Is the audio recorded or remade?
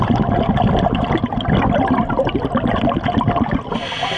recorded